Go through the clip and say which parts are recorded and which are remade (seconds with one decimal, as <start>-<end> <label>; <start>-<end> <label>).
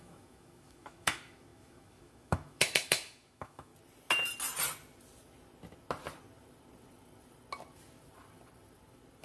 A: 0.0-3.7 remade; 3.7-9.2 recorded